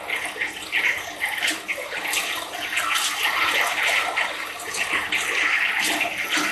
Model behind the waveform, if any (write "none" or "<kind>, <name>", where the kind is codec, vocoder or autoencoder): none